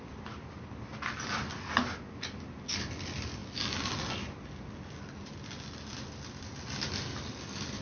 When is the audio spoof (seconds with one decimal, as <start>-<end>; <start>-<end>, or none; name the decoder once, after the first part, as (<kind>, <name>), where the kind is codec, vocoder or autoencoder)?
none